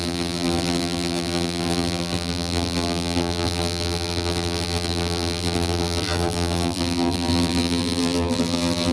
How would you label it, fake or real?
fake